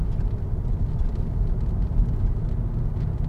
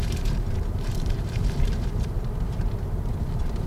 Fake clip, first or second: second